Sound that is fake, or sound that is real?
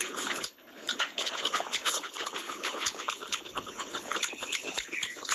fake